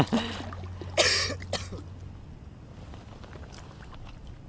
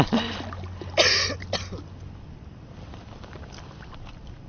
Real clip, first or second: first